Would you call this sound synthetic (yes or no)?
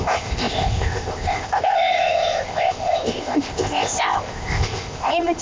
yes